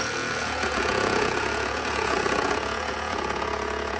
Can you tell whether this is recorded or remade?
remade